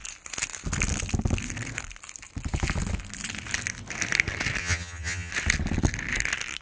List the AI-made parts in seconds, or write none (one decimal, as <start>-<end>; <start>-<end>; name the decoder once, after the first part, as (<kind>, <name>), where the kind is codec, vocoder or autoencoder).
4.6-5.3 (vocoder, HiFi-GAN)